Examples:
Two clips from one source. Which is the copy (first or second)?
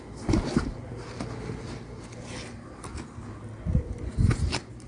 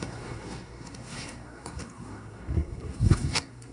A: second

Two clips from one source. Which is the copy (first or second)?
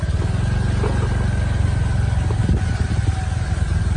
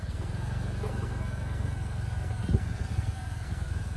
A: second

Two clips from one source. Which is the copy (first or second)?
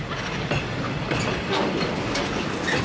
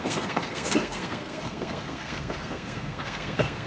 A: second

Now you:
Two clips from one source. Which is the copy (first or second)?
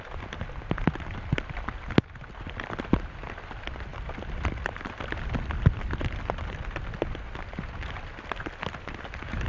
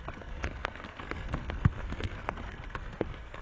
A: second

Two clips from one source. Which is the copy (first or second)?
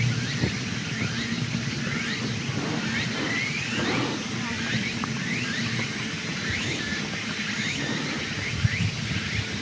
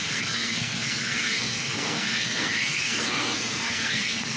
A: second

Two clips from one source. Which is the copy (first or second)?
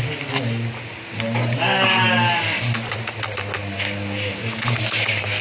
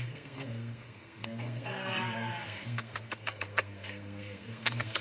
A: second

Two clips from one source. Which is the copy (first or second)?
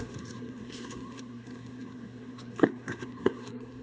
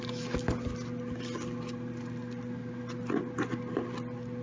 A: first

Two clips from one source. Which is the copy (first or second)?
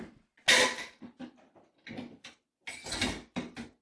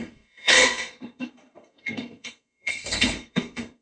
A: second